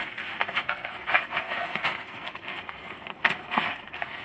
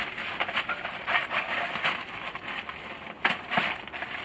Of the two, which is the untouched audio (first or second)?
second